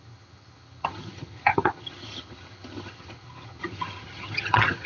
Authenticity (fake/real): fake